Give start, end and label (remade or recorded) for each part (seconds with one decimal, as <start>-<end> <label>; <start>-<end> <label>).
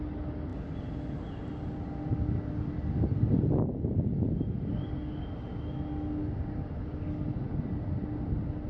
0.0-8.7 recorded